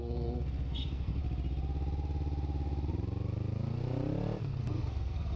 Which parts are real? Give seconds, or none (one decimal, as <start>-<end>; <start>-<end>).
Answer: 1.2-4.4